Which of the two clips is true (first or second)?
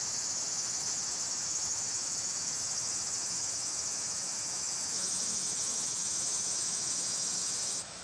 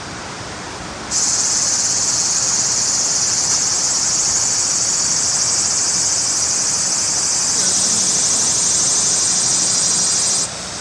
second